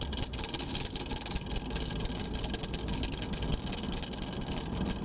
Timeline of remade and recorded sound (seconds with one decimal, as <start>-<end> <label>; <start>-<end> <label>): 0.0-5.0 recorded